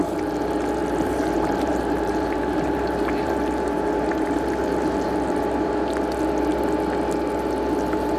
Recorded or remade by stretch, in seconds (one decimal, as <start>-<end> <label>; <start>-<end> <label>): 0.0-0.8 recorded; 0.8-5.7 remade; 5.7-8.2 recorded